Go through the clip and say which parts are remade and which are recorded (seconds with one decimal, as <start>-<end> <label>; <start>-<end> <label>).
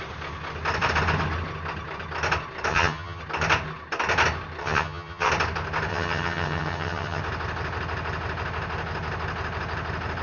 0.0-2.7 recorded; 2.7-3.2 remade; 3.2-4.6 recorded; 4.6-5.3 remade; 5.3-5.9 recorded; 5.9-7.2 remade; 7.2-10.2 recorded